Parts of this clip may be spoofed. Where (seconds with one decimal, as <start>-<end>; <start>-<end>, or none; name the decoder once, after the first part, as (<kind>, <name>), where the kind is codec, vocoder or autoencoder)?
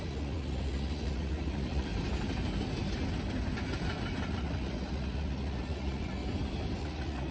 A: 0.0-1.9 (vocoder, Vocos); 4.3-6.2; 6.8-7.3